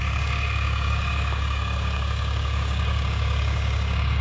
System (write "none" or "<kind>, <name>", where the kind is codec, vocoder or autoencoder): codec, DAC